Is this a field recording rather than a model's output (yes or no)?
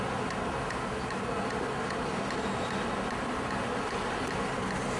yes